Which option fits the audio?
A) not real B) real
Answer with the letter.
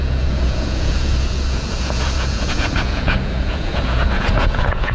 A